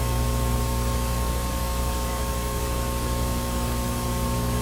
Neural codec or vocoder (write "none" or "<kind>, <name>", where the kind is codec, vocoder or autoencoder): codec, DAC